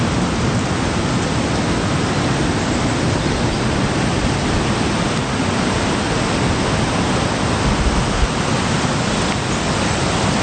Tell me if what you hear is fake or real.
real